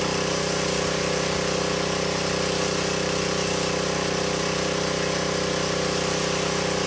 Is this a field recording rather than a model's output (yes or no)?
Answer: yes